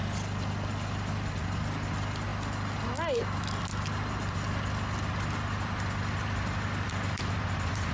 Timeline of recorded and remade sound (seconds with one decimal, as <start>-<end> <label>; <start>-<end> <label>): 0.0-7.9 recorded